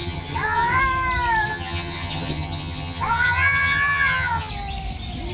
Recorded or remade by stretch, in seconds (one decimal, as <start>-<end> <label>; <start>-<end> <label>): 0.0-0.8 remade; 0.8-1.5 recorded; 1.5-4.5 remade; 4.5-5.3 recorded